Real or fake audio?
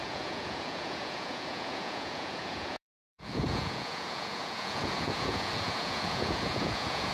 fake